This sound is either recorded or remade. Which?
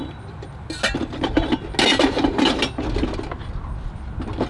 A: recorded